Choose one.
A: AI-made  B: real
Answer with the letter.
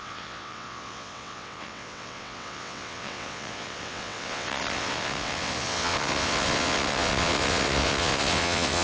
A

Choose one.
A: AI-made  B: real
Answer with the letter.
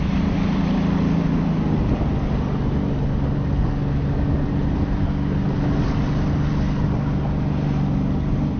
B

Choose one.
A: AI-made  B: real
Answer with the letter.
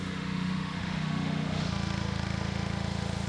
A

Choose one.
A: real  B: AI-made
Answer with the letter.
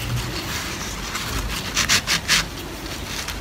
A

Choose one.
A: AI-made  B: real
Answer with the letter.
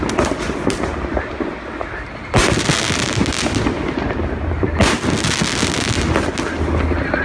B